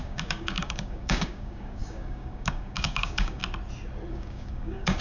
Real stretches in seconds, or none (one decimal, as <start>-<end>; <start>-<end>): 3.4-4.1